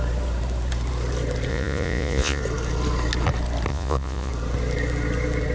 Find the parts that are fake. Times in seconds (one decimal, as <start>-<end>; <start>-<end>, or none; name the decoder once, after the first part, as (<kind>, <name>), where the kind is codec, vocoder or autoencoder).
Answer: 1.5-2.4 (vocoder, Vocos); 3.7-4.3